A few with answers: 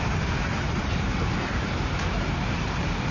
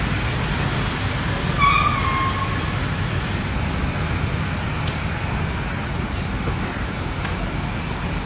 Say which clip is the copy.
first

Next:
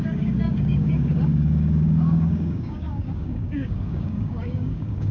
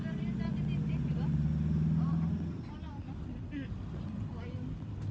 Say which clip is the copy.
first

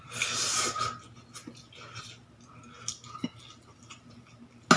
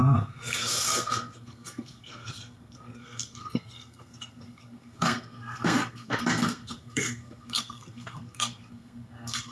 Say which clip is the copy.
second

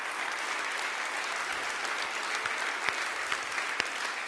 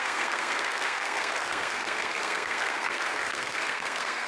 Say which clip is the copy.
second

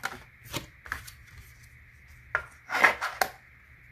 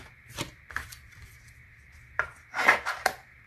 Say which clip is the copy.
second